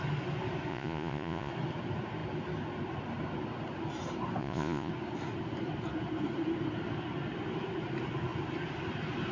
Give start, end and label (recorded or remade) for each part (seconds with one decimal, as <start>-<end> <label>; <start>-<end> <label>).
0.0-0.7 recorded; 0.7-1.5 remade; 1.5-4.4 recorded; 4.4-4.9 remade; 4.9-9.3 recorded